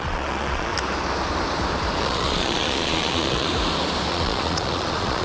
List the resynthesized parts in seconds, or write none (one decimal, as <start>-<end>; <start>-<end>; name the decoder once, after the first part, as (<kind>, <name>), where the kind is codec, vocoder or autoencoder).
0.0-0.7 (vocoder, Vocos); 2.0-3.5; 4.1-5.2